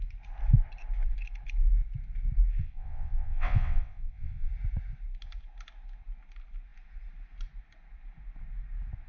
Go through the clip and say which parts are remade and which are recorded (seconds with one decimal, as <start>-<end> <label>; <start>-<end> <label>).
0.0-2.6 recorded; 2.6-4.5 remade; 4.5-9.1 recorded